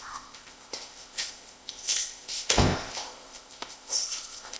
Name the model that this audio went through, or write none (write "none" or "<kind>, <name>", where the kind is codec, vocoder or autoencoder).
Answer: codec, ZipCodec